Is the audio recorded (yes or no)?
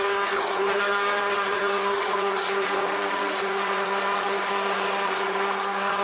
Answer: no